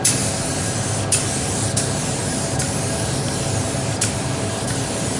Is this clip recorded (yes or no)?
yes